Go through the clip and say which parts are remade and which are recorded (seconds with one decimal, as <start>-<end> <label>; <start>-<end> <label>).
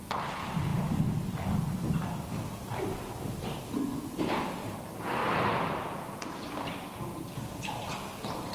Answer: 0.0-8.5 recorded